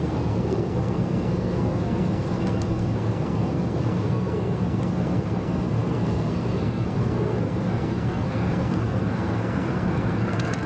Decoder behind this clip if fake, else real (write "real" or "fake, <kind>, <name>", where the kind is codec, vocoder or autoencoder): fake, codec, SNAC